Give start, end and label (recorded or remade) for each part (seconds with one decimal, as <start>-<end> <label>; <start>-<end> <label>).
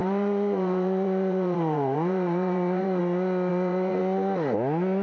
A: 0.0-3.0 remade; 3.0-3.5 recorded; 3.5-4.0 remade; 4.0-5.0 recorded